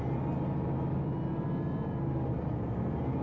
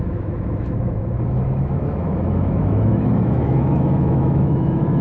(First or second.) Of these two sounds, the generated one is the second